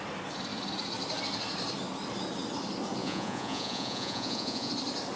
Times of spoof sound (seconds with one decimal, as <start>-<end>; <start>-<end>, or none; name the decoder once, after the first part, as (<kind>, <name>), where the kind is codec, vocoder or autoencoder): 3.0-4.7 (vocoder, Vocos)